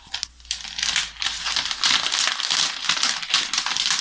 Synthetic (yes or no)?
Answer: no